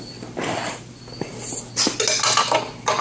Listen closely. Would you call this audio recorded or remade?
recorded